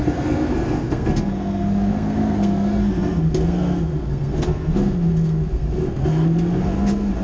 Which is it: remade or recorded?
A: remade